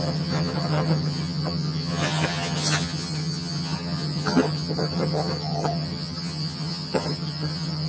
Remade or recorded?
remade